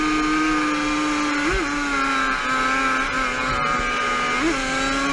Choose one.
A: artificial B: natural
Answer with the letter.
B